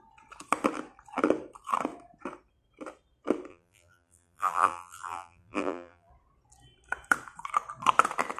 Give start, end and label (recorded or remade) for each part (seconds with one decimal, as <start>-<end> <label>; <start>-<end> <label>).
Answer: 0.0-3.5 recorded; 3.5-6.1 remade; 6.1-8.4 recorded